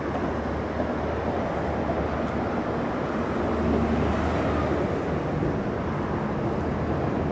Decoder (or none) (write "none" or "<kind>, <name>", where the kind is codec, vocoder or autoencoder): none